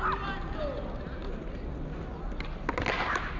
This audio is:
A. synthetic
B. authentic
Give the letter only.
B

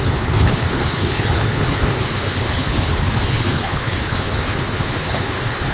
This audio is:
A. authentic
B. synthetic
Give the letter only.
B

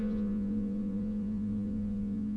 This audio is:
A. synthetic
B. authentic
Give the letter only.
A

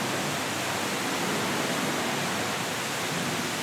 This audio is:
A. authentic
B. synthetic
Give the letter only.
A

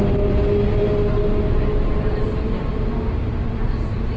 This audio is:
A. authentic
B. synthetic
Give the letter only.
A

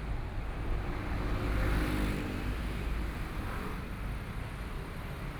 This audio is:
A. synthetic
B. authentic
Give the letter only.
B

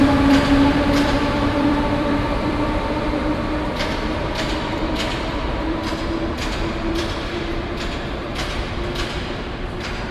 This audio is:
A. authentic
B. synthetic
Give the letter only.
B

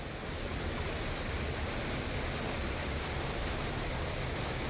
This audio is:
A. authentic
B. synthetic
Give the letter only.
A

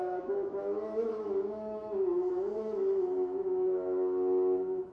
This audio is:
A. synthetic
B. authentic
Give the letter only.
A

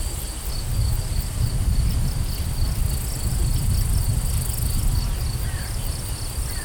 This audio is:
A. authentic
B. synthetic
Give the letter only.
A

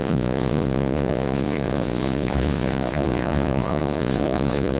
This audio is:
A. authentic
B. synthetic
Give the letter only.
B